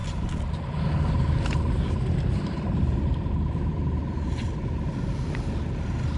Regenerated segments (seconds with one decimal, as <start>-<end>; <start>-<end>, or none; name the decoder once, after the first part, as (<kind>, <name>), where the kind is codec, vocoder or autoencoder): none